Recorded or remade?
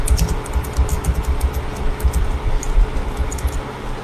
recorded